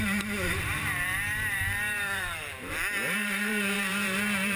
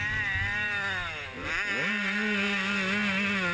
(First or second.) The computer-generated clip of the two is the first